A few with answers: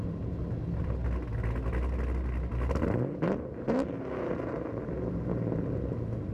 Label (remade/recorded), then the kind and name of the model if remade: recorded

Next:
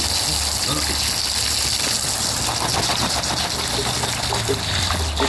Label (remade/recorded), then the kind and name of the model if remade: recorded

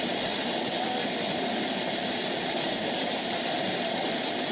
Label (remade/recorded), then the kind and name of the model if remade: recorded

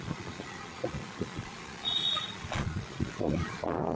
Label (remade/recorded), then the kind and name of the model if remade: remade, vocoder, Vocos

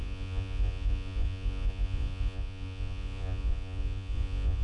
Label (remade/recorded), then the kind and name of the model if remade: remade, vocoder, Vocos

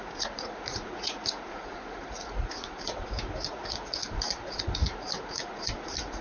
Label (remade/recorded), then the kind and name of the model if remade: remade, vocoder, Vocos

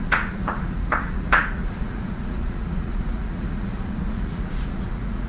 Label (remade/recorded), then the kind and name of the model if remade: remade, vocoder, Vocos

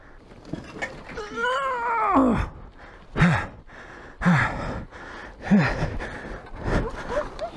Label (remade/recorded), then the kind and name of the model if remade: recorded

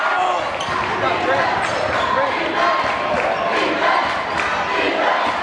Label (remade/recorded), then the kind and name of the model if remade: recorded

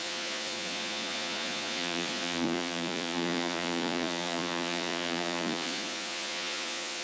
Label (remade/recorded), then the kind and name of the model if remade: remade, vocoder, Vocos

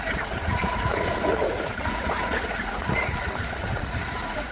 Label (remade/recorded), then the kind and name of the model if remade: remade, vocoder, Vocos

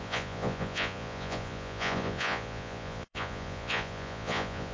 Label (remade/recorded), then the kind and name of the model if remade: remade, vocoder, Vocos